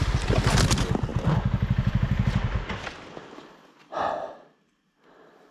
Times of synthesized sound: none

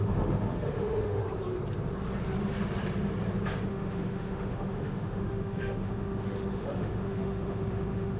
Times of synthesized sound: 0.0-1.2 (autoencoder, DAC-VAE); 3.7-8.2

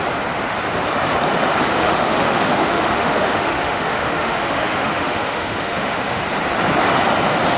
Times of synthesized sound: 1.8-6.2 (autoencoder, DAC-VAE)

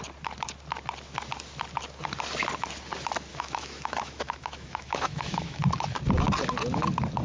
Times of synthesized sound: 3.3-5.6 (autoencoder, DAC-VAE)

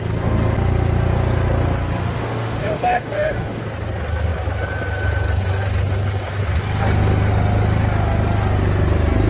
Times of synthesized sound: 2.0-3.6 (autoencoder, DAC-VAE)